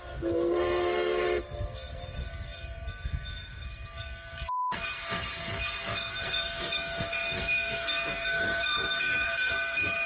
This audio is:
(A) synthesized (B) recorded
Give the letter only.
A